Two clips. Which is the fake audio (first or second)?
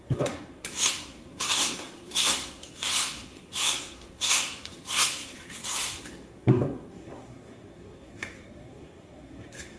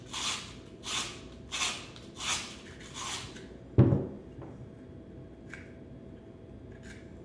first